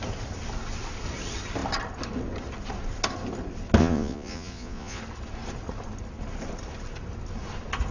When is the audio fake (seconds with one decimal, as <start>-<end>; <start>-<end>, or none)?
3.8-5.0